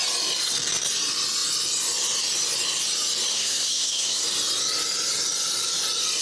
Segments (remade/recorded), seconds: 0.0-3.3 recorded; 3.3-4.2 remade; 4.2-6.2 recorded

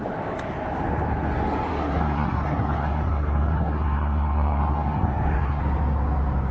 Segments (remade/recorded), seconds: 0.0-1.7 recorded; 1.7-5.6 remade; 5.6-6.5 recorded

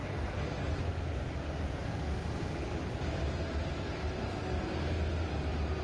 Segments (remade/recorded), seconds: 0.0-5.8 recorded

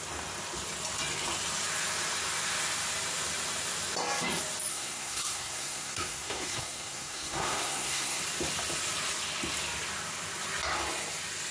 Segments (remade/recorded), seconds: 0.0-4.7 recorded; 4.7-8.2 remade; 8.2-11.5 recorded

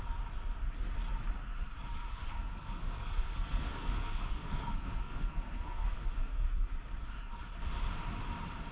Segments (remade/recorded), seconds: 0.0-2.1 recorded; 2.1-6.5 remade; 6.5-8.7 recorded

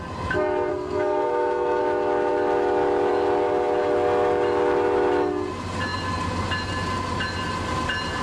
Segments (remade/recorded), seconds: 0.0-0.7 recorded; 0.7-1.8 remade; 1.8-8.2 recorded

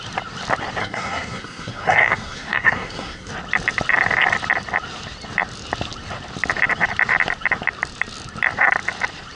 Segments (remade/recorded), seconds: 0.0-0.8 recorded; 0.8-3.3 remade; 3.3-9.4 recorded

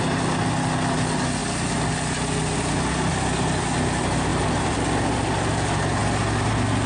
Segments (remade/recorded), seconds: 0.0-6.9 recorded